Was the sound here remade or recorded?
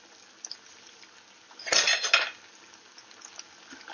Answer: recorded